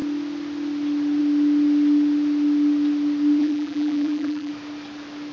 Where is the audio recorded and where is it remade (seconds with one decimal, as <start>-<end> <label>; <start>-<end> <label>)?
0.0-3.4 recorded; 3.4-4.5 remade; 4.5-5.3 recorded